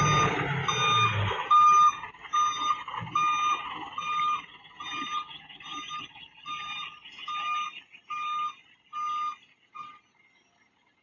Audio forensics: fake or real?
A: real